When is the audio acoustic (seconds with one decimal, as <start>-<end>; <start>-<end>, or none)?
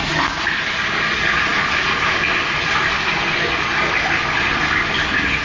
0.0-5.4